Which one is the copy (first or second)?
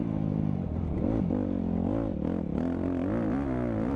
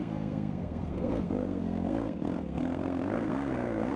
second